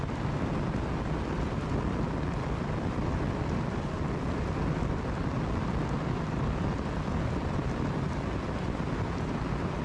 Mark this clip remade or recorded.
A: recorded